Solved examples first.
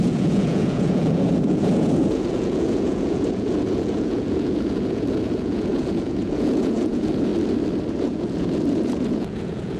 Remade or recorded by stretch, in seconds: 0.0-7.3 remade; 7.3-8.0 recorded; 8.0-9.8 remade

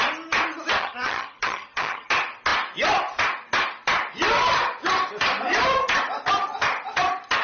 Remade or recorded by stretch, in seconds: 0.0-0.8 recorded; 0.8-2.1 remade; 2.1-7.4 recorded

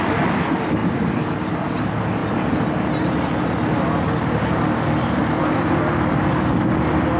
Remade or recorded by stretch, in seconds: 0.0-7.2 recorded

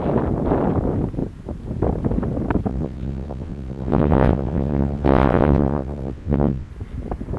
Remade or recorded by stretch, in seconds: 0.0-2.7 recorded; 2.7-6.7 remade; 6.7-7.4 recorded